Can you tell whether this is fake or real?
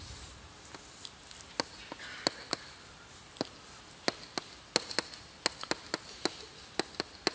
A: real